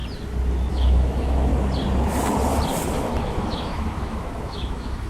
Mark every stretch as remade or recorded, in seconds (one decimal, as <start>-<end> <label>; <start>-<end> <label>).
0.0-0.7 recorded; 0.7-1.5 remade; 1.5-3.2 recorded; 3.2-5.1 remade

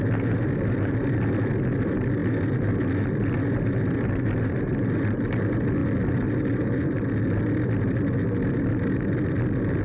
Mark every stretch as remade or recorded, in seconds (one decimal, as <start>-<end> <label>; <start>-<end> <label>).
0.0-9.8 recorded

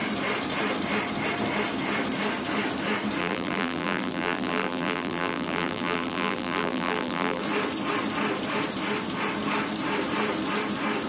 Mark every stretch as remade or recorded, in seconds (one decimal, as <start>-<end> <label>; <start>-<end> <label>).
0.0-3.2 recorded; 3.2-7.4 remade; 7.4-11.1 recorded

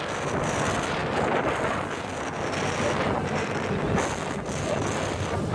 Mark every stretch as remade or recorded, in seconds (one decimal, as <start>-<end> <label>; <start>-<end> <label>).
0.0-5.5 recorded

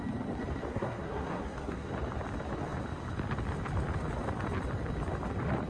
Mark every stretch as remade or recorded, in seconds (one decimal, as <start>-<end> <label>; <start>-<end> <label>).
0.0-0.7 recorded; 0.7-1.9 remade; 1.9-5.7 recorded

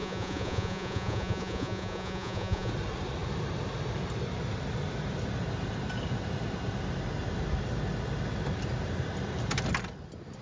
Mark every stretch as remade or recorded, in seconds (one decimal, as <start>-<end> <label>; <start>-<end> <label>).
0.0-2.7 remade; 2.7-10.4 recorded

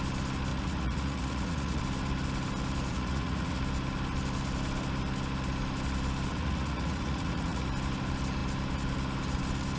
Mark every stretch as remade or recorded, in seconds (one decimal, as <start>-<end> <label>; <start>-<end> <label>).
0.0-0.5 recorded; 0.5-1.8 remade; 1.8-2.9 recorded; 2.9-3.6 remade; 3.6-6.3 recorded; 6.3-7.6 remade; 7.6-9.8 recorded

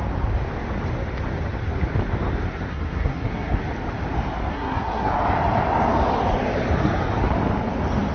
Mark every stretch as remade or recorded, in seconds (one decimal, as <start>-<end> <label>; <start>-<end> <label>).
0.0-2.7 recorded; 2.7-3.6 remade; 3.6-4.5 recorded; 4.5-5.1 remade; 5.1-8.1 recorded